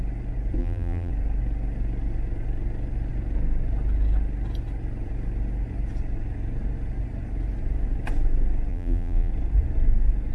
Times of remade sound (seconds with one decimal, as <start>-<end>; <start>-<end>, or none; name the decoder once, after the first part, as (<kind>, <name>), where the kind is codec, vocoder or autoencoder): 0.6-1.1 (vocoder, BigVGAN v2); 8.7-9.3